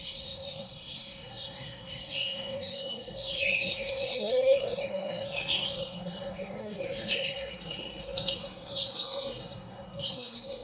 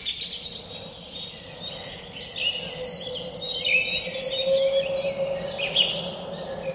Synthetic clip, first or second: first